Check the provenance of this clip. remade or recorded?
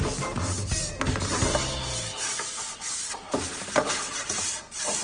recorded